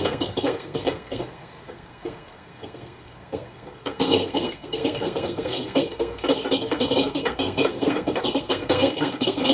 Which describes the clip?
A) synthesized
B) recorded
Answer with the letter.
A